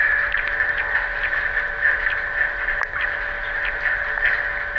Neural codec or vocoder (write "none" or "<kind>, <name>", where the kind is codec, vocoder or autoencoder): none